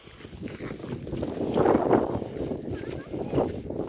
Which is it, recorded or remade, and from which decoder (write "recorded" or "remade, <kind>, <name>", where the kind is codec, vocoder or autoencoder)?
recorded